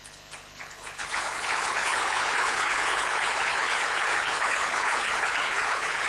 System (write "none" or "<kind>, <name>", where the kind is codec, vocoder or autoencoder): codec, HILCodec